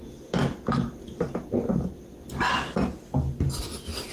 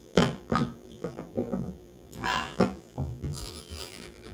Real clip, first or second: first